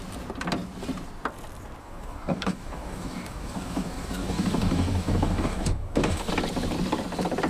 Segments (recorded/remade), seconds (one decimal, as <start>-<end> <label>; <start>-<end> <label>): 0.0-1.8 recorded; 1.8-6.3 remade; 6.3-7.5 recorded